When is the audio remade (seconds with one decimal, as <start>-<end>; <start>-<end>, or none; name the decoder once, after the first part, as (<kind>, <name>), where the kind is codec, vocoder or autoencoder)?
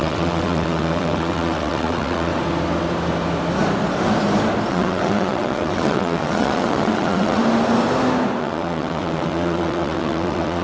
0.0-2.3 (vocoder, WaveNeXt); 4.7-7.4; 8.4-10.6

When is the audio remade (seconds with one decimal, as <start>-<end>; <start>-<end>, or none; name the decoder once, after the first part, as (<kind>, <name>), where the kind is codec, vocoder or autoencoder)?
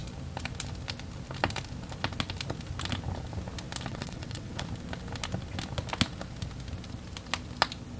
3.9-4.6 (vocoder, WaveNeXt)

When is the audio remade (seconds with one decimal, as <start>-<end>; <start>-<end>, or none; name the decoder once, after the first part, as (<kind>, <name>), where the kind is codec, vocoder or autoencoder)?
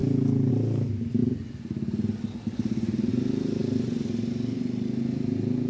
none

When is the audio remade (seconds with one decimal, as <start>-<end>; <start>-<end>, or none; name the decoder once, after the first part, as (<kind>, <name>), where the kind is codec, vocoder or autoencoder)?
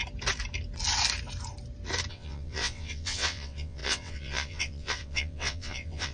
2.1-6.1 (vocoder, WaveNeXt)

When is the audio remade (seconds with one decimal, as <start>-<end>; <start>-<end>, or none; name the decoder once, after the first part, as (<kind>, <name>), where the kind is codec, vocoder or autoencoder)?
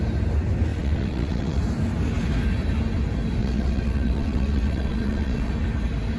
0.7-1.6 (vocoder, WaveNeXt); 3.4-5.5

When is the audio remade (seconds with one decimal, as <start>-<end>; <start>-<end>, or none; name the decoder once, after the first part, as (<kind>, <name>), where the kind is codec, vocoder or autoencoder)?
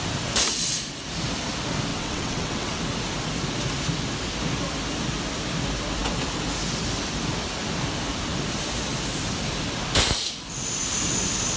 1.9-2.8 (vocoder, WaveNeXt)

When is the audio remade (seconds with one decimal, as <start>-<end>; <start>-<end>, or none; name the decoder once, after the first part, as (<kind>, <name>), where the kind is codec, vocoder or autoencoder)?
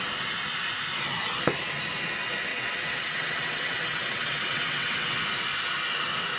2.5-5.2 (vocoder, WaveNeXt)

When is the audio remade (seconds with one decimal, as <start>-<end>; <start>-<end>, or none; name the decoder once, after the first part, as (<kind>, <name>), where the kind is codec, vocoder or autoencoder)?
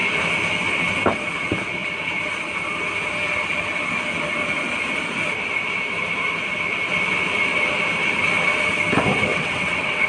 9.3-10.1 (vocoder, WaveNeXt)